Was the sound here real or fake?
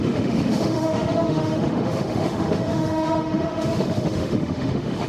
fake